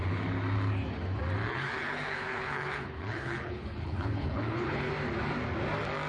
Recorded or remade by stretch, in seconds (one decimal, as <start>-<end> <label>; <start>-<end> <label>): 0.0-1.5 recorded; 1.5-4.9 remade; 4.9-6.1 recorded